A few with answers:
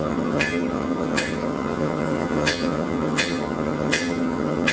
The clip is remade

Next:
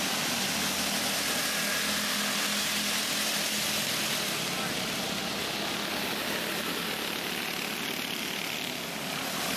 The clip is recorded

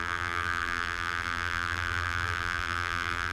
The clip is remade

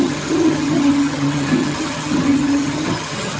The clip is remade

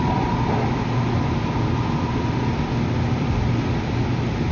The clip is recorded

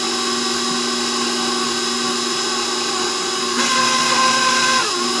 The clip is recorded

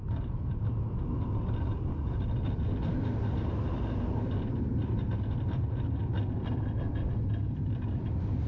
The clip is recorded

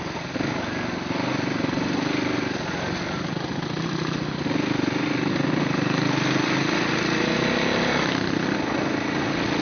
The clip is recorded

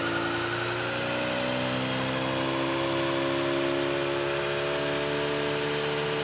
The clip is recorded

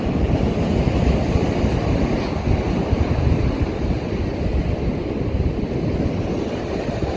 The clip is recorded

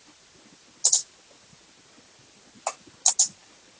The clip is recorded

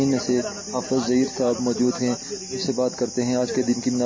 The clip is recorded